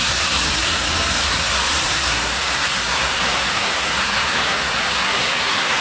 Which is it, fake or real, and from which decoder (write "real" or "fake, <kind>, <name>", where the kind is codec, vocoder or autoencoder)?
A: fake, codec, SNAC